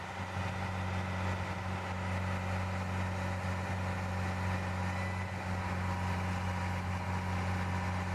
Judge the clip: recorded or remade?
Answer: recorded